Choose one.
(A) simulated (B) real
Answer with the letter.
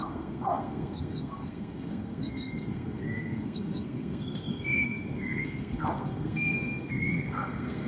A